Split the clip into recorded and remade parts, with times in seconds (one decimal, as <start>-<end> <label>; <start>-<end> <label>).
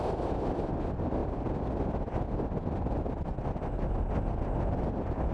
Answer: 0.0-5.3 recorded